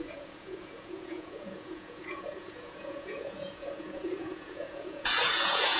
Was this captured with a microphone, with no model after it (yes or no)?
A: no